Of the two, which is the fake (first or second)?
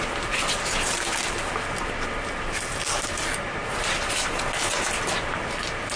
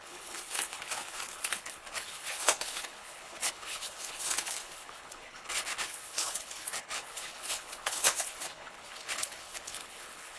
second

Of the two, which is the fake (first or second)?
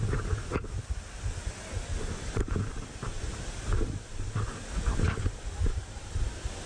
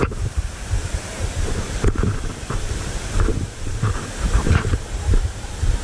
second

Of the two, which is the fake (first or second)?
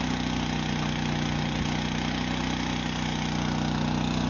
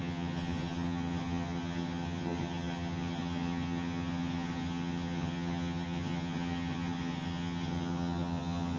second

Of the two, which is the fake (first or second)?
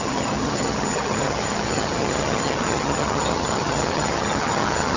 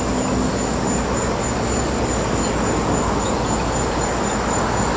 first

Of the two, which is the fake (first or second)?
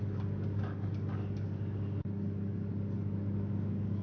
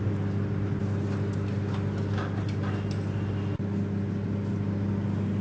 first